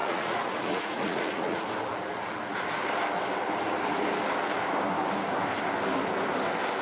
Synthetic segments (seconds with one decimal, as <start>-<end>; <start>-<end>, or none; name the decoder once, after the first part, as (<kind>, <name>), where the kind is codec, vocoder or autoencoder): 0.0-1.6 (vocoder, Vocos)